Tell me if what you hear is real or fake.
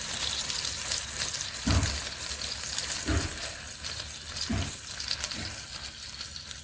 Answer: real